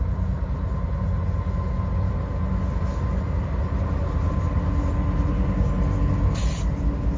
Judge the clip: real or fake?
real